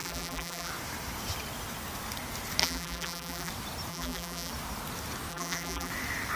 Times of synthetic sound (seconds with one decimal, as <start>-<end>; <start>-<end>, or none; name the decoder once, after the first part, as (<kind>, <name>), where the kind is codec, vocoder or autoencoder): 0.0-0.7 (vocoder, BigVGAN v2); 2.6-3.5; 3.9-4.5; 5.3-5.9